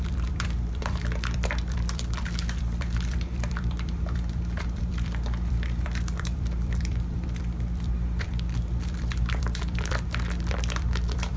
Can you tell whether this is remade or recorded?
remade